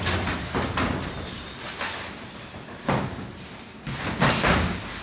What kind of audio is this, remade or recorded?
recorded